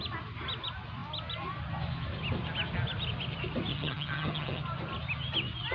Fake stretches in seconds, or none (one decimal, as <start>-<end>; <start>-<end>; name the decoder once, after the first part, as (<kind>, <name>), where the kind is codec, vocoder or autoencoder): 3.7-4.6 (vocoder, HiFi-GAN)